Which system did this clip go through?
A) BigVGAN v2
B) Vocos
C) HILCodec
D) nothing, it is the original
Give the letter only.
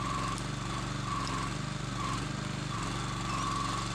D